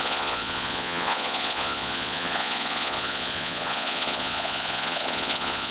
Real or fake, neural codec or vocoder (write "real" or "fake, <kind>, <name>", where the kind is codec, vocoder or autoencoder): fake, vocoder, Vocos